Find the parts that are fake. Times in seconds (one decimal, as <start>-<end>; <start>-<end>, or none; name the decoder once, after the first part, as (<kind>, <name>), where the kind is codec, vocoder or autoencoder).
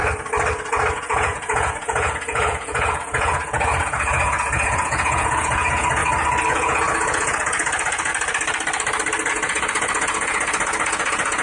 0.9-6.0 (vocoder, Vocos); 6.5-8.1; 9.3-11.4